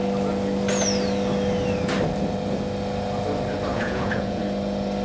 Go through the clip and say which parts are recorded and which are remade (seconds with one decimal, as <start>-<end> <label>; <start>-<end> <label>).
0.0-3.7 recorded; 3.7-4.4 remade; 4.4-5.0 recorded